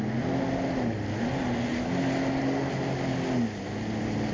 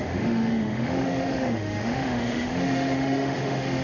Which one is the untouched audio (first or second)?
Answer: first